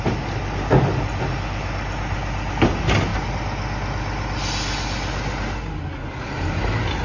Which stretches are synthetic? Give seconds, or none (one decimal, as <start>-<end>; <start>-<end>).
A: none